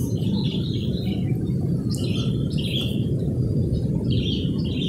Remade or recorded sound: remade